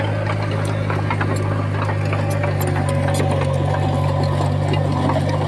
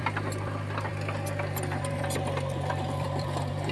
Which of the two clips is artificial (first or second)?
second